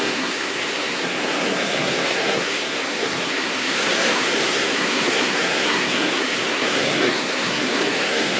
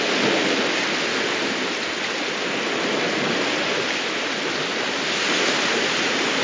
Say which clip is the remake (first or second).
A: first